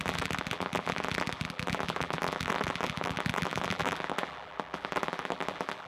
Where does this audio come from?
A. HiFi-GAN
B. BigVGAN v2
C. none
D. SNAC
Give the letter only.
B